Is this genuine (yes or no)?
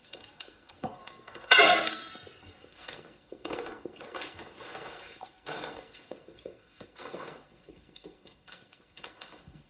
no